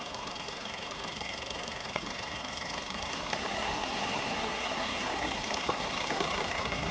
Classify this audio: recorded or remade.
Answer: remade